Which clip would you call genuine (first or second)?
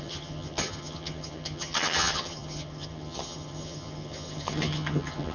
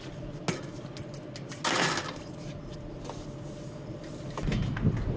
second